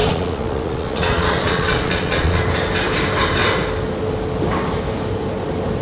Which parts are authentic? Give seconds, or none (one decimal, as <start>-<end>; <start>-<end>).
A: 2.4-5.8